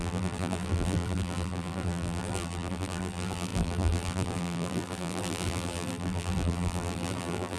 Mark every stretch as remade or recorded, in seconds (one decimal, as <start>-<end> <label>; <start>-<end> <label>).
0.0-7.6 remade